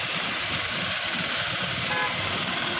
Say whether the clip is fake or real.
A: fake